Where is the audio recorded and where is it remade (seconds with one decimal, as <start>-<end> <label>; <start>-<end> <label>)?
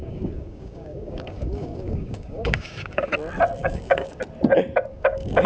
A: 0.0-3.1 remade; 3.1-3.6 recorded; 3.6-4.2 remade; 4.2-4.9 recorded; 4.9-5.5 remade